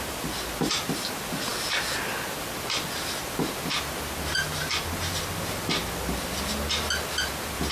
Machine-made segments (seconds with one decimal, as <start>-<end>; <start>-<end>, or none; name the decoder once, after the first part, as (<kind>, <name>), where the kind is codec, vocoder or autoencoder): none